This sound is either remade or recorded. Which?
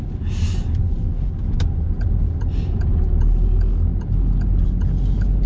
recorded